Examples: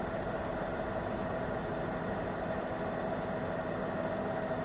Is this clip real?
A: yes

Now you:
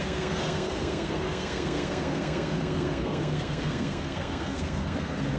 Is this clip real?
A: no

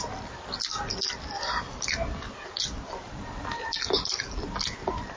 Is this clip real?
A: yes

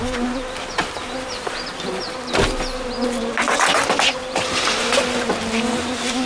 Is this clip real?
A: yes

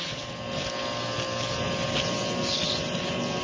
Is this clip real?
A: yes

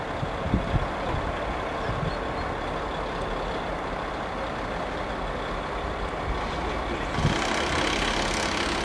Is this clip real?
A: yes